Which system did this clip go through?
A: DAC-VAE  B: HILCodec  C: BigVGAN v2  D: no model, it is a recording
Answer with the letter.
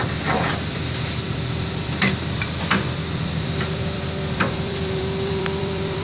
C